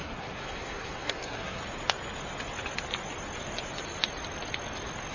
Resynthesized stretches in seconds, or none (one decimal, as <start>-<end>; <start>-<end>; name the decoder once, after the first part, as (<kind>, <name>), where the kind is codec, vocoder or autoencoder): 0.0-1.6 (codec, SNAC)